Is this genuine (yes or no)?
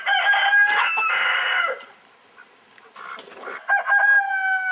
yes